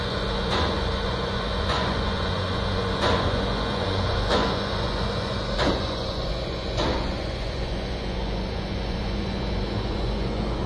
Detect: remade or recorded remade